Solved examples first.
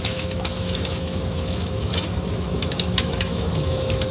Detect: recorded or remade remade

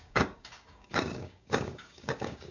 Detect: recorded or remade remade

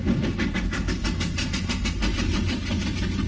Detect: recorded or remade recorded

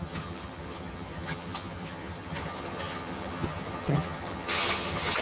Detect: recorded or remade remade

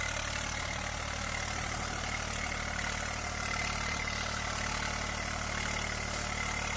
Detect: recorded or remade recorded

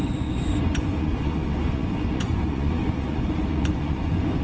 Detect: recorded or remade remade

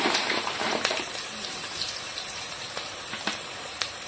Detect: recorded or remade remade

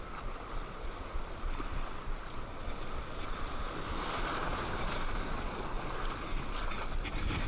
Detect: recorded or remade recorded